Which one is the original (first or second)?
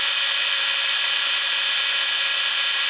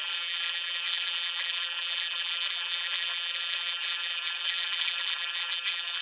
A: first